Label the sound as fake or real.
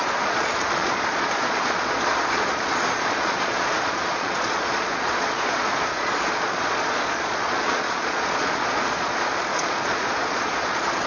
fake